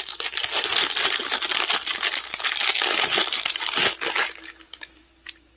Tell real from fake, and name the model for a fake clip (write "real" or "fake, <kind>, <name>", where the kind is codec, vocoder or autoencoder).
real